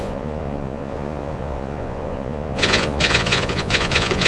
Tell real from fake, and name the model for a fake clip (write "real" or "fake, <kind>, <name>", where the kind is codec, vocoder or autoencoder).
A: fake, vocoder, Vocos